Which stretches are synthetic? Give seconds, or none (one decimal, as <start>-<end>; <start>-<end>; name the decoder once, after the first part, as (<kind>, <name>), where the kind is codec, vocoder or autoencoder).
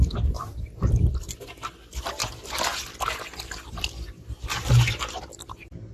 none